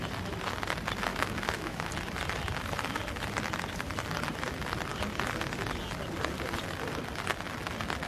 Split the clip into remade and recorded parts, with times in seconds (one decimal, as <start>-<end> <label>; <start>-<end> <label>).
0.0-1.1 recorded; 1.1-1.9 remade; 1.9-8.1 recorded